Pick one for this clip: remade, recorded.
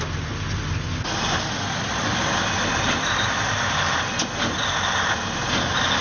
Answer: recorded